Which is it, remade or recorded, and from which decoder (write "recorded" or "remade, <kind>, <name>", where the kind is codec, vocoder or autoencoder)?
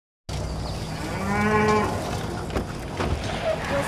recorded